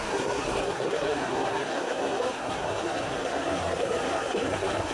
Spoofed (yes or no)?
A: yes